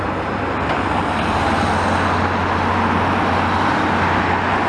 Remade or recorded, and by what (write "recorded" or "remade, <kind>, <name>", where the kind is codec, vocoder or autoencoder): recorded